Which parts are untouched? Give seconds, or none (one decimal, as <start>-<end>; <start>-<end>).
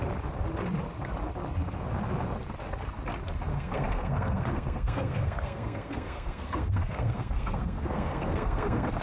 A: 0.0-3.5